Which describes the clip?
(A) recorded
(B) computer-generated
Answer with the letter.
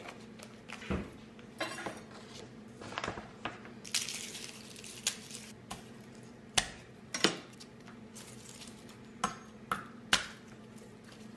A